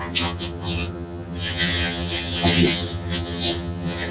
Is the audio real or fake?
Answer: fake